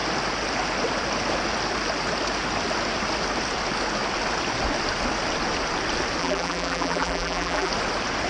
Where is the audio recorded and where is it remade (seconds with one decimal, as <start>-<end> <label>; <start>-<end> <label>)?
0.0-6.2 recorded; 6.2-7.7 remade; 7.7-8.3 recorded